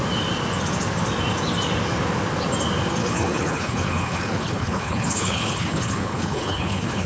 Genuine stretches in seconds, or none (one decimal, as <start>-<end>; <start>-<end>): 0.0-3.0